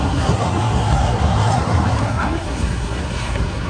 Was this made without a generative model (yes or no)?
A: no